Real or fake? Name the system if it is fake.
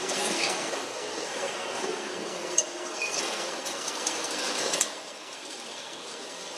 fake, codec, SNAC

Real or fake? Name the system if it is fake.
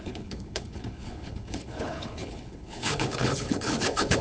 fake, codec, HILCodec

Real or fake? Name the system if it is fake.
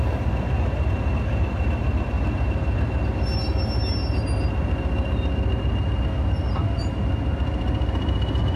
real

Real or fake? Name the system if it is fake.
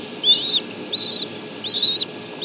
real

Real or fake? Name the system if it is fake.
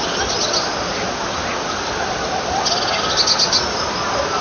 real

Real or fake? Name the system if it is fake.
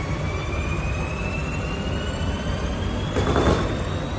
real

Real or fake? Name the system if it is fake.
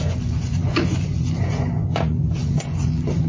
fake, vocoder, Vocos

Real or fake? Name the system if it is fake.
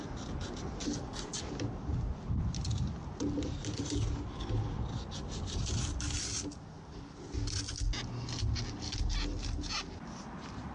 real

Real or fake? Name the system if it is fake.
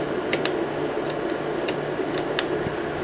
real